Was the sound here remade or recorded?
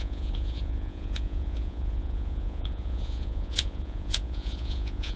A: remade